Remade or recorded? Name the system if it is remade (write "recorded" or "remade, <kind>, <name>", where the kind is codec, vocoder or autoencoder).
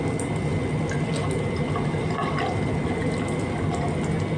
recorded